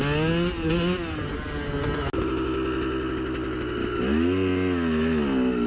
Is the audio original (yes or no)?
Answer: yes